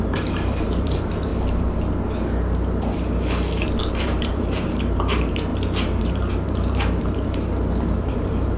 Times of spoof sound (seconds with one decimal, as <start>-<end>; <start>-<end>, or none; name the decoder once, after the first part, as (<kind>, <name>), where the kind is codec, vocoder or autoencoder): 0.0-1.3 (vocoder, BigVGAN v2); 3.9-8.6